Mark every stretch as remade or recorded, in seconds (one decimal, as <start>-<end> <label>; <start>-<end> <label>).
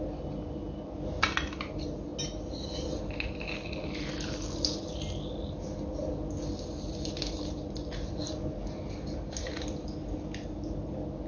0.0-11.3 recorded